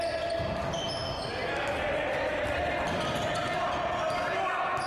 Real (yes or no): yes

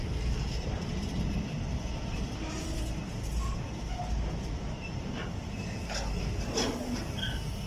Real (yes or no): yes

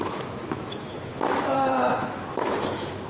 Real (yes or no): no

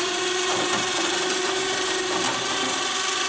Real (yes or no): no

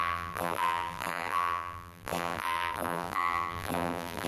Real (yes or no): no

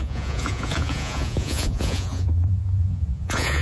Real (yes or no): no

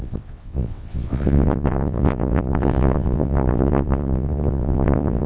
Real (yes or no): no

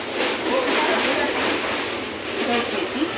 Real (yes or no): no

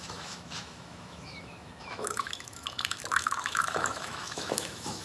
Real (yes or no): no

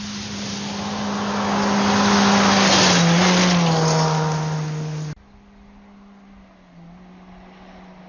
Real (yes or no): yes